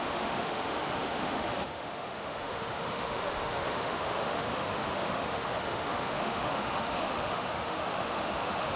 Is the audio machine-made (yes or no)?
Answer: yes